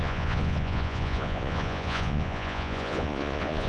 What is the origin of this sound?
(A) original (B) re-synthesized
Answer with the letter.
B